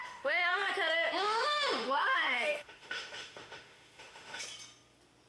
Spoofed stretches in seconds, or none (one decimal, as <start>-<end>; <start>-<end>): 0.0-0.7; 1.2-4.4